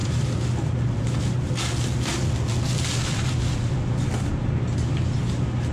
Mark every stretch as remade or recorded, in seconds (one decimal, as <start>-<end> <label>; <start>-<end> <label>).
0.0-1.0 remade; 1.0-2.1 recorded; 2.1-4.3 remade; 4.3-5.7 recorded